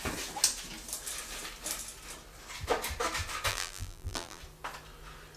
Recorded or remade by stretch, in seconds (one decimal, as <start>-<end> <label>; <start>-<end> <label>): 0.0-3.5 recorded; 3.5-4.4 remade; 4.4-5.4 recorded